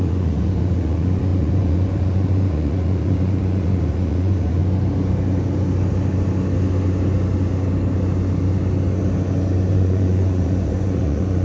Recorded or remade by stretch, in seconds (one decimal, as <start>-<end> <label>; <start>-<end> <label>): 0.0-4.6 remade; 4.6-9.7 recorded; 9.7-11.4 remade